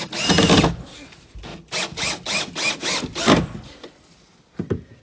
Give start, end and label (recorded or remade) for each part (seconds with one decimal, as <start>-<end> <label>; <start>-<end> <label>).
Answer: 0.0-5.0 recorded